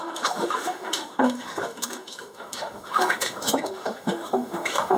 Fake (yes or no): yes